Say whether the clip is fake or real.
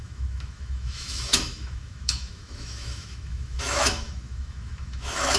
fake